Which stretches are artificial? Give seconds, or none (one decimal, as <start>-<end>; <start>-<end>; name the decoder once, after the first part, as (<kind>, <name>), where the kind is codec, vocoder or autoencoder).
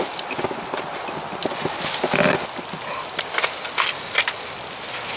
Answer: none